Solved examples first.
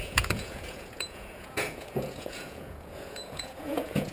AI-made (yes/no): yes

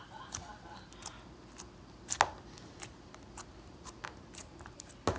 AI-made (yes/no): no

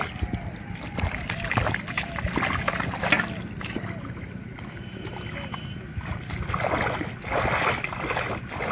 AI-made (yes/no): no